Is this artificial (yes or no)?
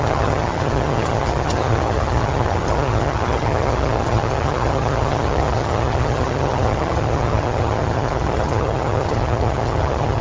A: yes